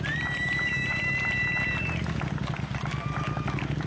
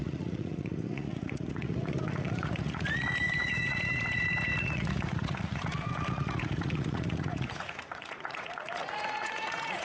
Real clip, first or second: first